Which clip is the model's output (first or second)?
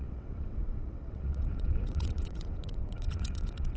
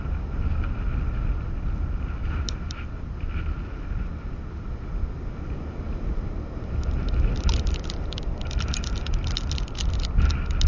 first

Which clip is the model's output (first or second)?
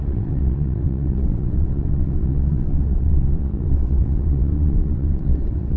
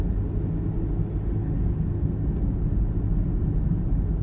first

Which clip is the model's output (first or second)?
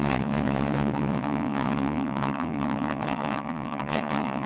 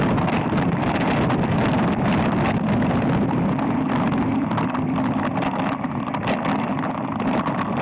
first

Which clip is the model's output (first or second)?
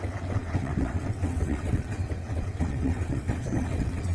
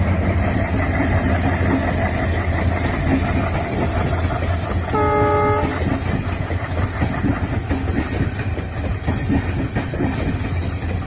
first